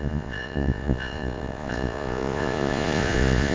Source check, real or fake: fake